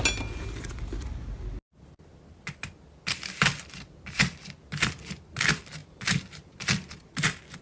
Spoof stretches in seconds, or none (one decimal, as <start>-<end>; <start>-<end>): none